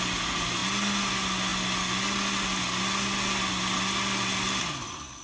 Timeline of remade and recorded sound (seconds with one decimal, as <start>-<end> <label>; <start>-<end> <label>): 0.0-5.2 recorded

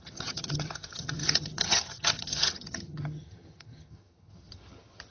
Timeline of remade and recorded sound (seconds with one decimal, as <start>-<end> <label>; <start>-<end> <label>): 0.0-5.1 remade